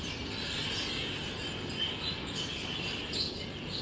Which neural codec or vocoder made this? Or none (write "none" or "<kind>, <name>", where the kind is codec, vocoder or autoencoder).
none